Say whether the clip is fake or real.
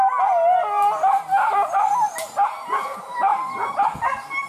real